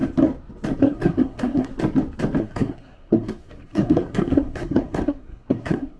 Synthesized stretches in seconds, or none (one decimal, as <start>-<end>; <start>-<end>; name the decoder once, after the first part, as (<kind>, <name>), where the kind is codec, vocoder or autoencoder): 0.8-1.7 (codec, SNAC); 2.4-6.0